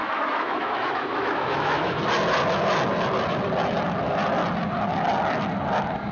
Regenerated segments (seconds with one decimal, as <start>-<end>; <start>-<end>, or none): 0.0-2.0